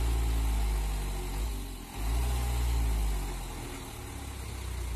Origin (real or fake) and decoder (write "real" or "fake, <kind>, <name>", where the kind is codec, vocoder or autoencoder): real